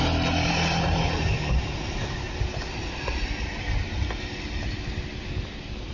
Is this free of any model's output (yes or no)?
yes